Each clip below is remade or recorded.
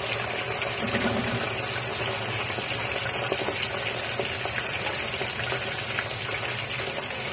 recorded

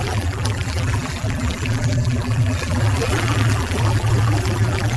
remade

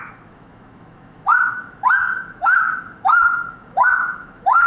remade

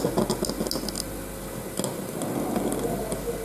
recorded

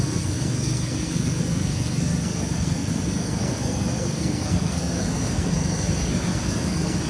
remade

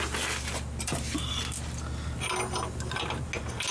recorded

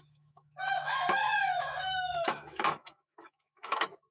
remade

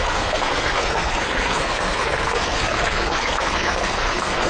remade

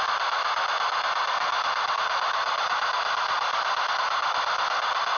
recorded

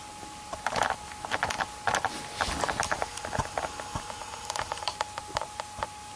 recorded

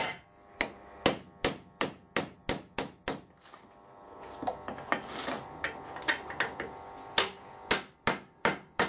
recorded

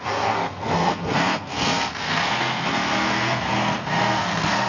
remade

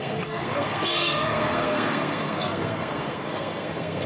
remade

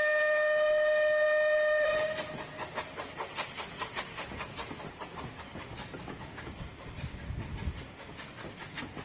recorded